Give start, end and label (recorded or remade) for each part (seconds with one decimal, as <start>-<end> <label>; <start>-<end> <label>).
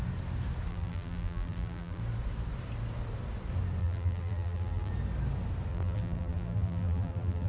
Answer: 0.0-0.7 recorded; 0.7-2.0 remade; 2.0-3.8 recorded; 3.8-4.9 remade; 4.9-5.7 recorded; 5.7-7.5 remade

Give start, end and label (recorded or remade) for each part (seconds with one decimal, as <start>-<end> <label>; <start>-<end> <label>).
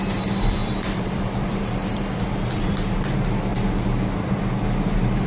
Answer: 0.0-0.6 recorded; 0.6-2.7 remade; 2.7-5.3 recorded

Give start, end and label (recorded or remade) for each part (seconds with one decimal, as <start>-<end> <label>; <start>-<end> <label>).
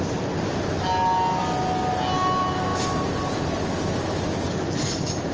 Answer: 0.0-5.3 recorded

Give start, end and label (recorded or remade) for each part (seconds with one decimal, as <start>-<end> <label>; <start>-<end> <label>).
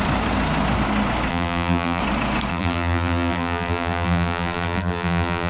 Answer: 0.0-1.3 recorded; 1.3-2.0 remade; 2.0-2.5 recorded; 2.5-5.5 remade